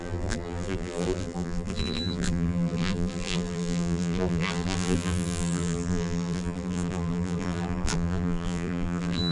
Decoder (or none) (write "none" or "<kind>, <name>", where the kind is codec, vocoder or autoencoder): vocoder, BigVGAN v2